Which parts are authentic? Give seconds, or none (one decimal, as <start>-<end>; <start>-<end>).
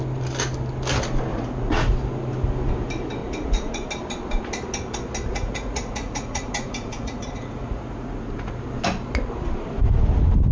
0.0-1.3; 1.8-3.2; 3.9-5.3; 8.6-10.5